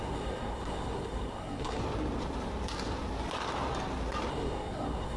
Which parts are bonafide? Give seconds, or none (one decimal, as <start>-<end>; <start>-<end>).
1.8-4.3